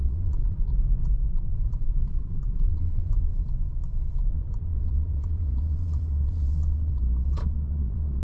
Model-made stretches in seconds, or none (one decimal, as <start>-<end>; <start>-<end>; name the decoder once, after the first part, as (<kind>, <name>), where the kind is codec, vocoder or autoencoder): 0.0-0.7 (vocoder, Vocos); 1.3-8.2